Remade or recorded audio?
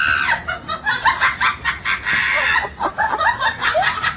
recorded